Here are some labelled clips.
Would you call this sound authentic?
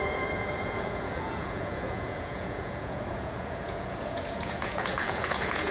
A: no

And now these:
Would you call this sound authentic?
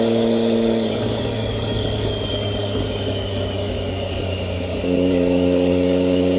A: no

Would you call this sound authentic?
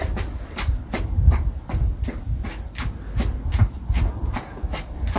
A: yes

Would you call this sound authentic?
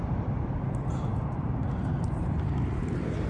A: no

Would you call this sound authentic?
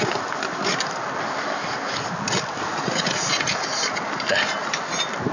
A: yes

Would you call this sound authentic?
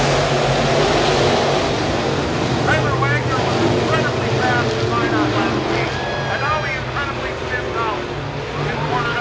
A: yes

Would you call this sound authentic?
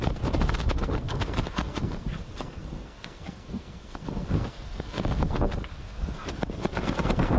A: no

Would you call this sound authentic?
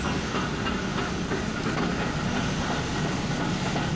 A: yes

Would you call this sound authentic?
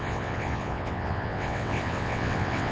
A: no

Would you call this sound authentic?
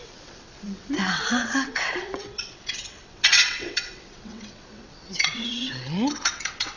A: no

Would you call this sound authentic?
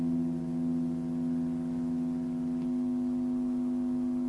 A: yes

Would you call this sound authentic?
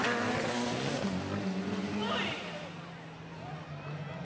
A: yes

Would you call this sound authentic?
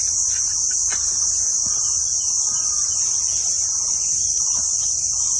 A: yes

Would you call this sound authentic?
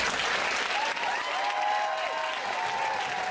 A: yes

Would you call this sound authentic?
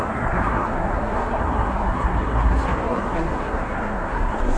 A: no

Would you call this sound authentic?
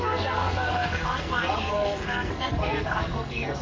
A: no